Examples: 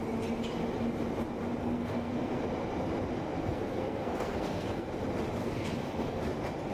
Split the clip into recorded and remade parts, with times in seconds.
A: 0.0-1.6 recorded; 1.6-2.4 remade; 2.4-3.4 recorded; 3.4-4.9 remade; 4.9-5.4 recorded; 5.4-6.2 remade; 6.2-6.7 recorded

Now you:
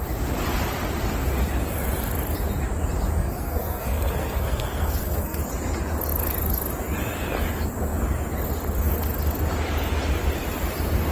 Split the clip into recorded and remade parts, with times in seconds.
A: 0.0-3.2 recorded; 3.2-5.4 remade; 5.4-11.1 recorded

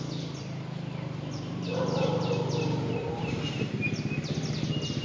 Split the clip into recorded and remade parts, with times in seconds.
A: 0.0-5.0 recorded

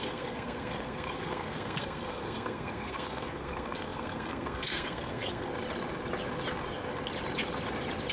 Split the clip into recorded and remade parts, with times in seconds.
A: 0.0-5.5 remade; 5.5-8.1 recorded